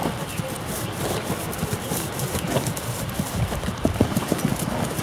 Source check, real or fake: fake